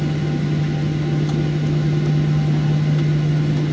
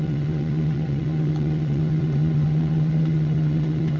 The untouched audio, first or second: first